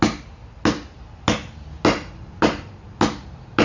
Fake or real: real